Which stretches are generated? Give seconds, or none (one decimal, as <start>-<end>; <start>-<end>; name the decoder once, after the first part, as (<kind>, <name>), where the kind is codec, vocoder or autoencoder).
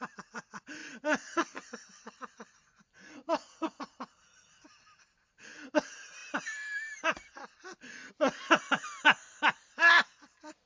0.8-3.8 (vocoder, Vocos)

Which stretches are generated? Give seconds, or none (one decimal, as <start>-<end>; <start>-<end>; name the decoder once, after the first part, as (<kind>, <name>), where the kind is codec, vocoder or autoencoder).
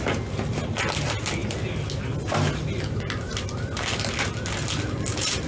none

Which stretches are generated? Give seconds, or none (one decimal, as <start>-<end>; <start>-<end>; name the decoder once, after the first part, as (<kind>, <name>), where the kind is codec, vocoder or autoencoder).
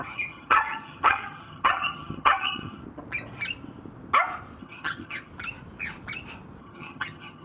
0.0-2.8 (vocoder, HiFi-GAN); 4.6-5.3; 6.6-7.4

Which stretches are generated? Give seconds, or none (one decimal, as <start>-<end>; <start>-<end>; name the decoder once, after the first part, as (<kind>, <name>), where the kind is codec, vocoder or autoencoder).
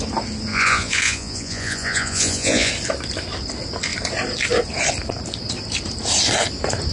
0.5-2.7 (vocoder, Vocos)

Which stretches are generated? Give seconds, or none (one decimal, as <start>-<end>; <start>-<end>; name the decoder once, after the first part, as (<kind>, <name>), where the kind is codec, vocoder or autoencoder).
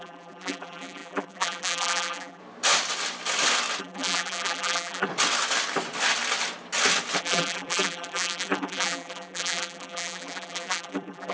0.0-2.4 (vocoder, BigVGAN v2); 3.8-5.1; 7.2-11.3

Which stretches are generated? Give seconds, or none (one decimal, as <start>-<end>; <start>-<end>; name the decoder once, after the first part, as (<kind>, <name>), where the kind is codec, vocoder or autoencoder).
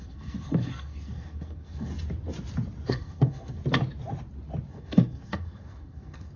0.0-1.9 (codec, SNAC); 2.9-3.6; 4.7-6.4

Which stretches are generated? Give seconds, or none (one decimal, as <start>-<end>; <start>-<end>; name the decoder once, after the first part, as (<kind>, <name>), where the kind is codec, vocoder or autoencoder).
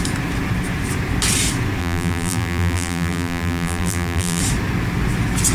1.8-4.4 (vocoder, BigVGAN v2)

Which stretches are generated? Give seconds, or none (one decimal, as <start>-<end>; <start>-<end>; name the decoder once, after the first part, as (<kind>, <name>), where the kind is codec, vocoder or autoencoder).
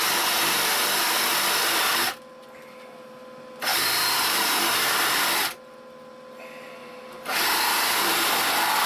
3.7-4.4 (vocoder, BigVGAN v2); 6.8-8.9